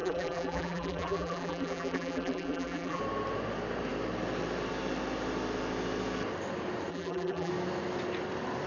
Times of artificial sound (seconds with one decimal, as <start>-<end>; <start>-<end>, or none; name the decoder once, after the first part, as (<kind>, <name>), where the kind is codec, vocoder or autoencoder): 0.0-3.0 (vocoder, BigVGAN v2); 6.9-7.5